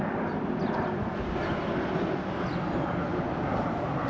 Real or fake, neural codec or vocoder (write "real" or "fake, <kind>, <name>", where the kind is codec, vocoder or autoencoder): real